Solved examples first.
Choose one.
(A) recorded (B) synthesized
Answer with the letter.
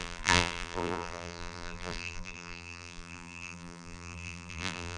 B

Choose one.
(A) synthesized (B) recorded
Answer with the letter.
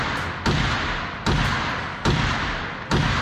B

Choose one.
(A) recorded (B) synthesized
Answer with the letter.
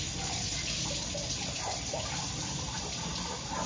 A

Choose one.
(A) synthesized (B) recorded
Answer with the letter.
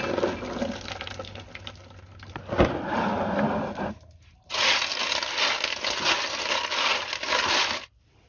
B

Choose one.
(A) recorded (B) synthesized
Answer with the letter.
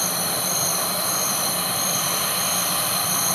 B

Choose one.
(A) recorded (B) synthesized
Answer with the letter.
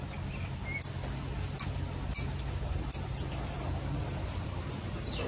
A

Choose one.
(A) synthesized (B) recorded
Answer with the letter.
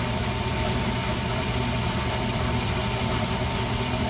A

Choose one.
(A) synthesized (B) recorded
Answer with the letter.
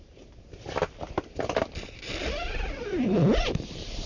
A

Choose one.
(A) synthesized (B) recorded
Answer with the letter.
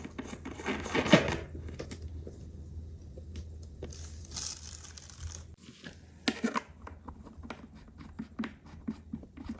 B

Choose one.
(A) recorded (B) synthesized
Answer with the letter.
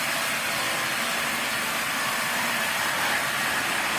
B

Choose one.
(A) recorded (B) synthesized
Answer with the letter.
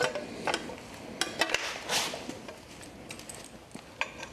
A